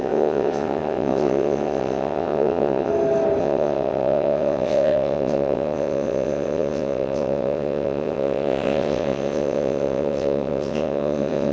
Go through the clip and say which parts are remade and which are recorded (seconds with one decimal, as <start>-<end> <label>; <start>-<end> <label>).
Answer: 0.0-2.9 remade; 2.9-3.4 recorded; 3.4-11.5 remade